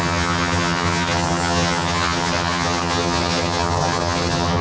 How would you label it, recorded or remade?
remade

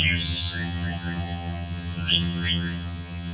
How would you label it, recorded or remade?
remade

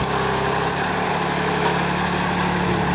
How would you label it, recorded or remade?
recorded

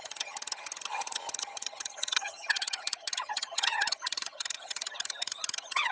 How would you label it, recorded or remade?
remade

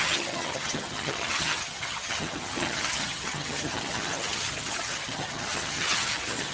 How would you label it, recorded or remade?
remade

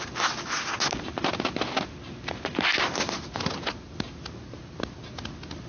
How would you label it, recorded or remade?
recorded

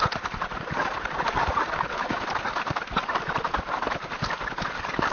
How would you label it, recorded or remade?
recorded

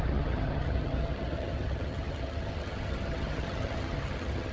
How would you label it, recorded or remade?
remade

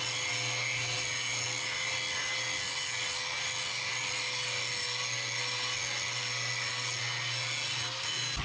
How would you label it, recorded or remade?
recorded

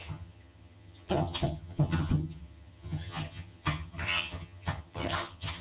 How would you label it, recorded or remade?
remade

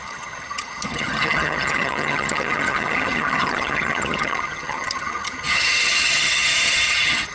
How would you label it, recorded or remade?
remade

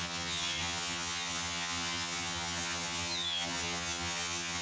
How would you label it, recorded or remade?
remade